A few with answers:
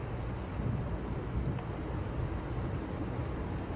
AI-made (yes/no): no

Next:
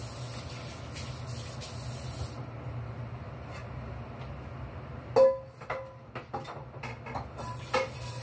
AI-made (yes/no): no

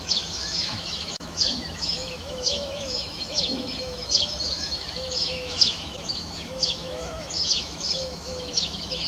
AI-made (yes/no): yes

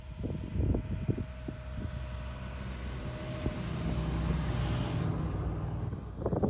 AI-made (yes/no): no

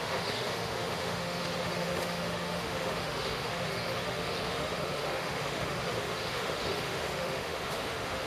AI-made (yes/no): yes